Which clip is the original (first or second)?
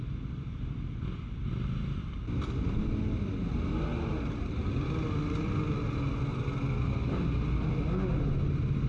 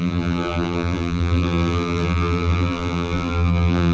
first